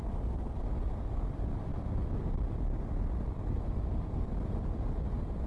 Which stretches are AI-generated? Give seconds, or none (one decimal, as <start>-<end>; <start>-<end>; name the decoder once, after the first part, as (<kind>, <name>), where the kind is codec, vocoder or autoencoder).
none